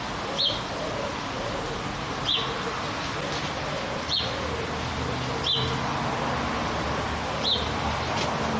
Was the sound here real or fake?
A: real